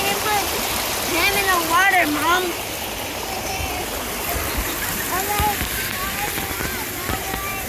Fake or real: real